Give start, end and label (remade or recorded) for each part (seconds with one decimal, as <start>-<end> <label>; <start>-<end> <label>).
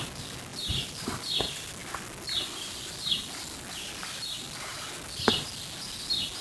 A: 0.0-6.4 recorded